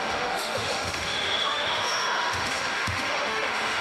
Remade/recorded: remade